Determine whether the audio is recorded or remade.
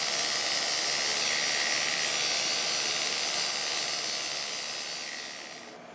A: recorded